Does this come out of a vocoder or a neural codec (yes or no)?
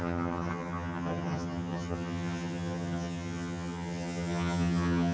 yes